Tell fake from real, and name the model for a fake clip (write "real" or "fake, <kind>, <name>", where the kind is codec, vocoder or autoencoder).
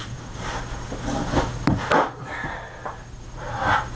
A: real